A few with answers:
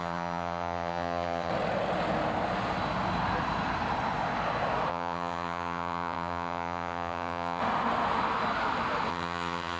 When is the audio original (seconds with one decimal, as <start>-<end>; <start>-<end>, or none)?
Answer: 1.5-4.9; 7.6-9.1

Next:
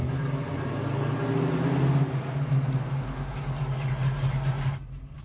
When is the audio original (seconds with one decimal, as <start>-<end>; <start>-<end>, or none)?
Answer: 0.0-5.2

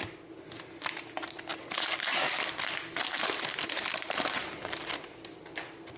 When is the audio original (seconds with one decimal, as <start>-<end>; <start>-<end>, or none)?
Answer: 0.0-6.0

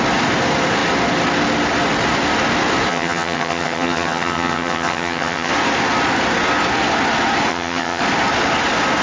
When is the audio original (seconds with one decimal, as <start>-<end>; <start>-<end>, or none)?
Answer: 0.0-2.9; 5.5-7.5; 8.0-9.0

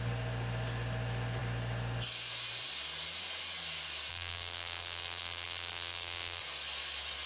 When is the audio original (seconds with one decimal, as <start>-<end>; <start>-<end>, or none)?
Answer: 0.0-4.1; 6.4-7.3

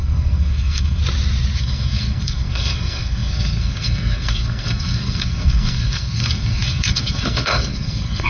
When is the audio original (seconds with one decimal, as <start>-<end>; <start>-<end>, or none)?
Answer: 1.0-1.6

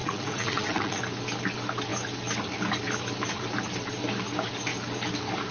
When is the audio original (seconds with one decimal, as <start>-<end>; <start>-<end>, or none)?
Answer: 1.0-5.5